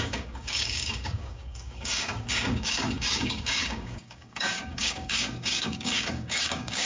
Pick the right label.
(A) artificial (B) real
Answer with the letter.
A